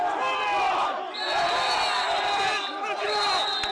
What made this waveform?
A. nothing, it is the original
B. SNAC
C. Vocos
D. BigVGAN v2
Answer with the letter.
A